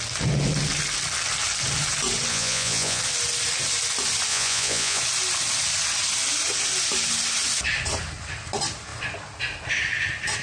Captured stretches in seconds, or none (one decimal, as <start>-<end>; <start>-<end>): 0.0-2.3; 3.0-4.3; 5.0-10.4